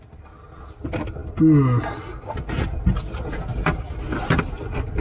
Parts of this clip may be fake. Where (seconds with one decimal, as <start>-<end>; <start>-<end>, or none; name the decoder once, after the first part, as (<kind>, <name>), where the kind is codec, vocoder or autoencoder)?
none